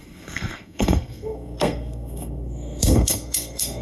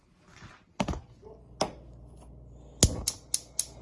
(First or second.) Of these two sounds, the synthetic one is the first